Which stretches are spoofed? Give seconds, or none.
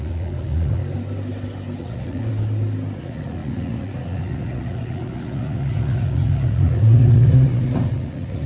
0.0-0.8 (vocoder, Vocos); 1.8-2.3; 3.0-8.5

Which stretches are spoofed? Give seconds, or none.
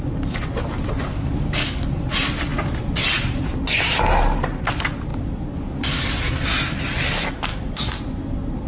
1.1-1.9 (codec, DAC); 5.1-6.1; 7.5-8.0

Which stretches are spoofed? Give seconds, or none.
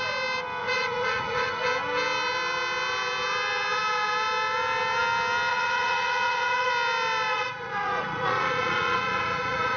0.6-1.6 (vocoder, Vocos); 5.5-6.7; 7.3-9.8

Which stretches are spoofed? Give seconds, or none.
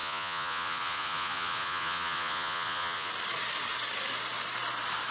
0.0-3.1 (vocoder, Vocos)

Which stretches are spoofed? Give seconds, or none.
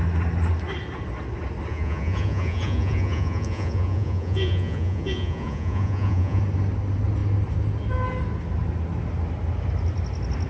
1.7-6.4 (vocoder, Vocos)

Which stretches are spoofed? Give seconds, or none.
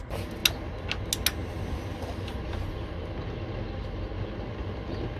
none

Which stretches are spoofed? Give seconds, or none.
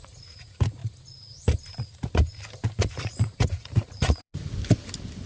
0.0-0.8 (vocoder, Vocos); 2.8-4.3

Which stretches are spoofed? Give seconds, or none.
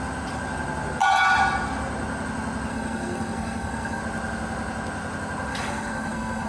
2.7-4.0 (codec, SNAC); 5.5-6.5